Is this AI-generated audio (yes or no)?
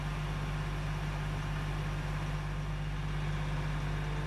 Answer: no